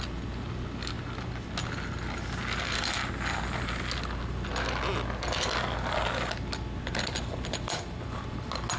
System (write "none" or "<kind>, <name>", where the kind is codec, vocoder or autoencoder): none